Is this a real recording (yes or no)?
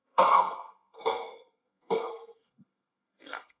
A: no